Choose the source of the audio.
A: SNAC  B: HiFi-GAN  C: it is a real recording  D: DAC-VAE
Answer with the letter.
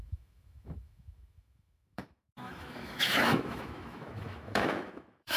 D